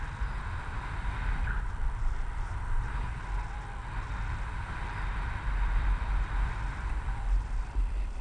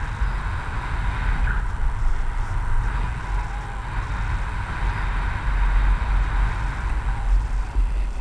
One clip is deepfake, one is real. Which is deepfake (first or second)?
first